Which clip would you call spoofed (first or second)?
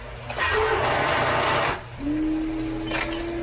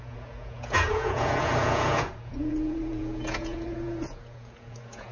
second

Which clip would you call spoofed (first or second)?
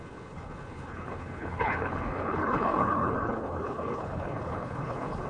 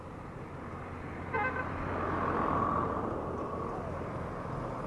first